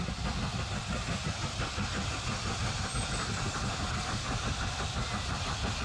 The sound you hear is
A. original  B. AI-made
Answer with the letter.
A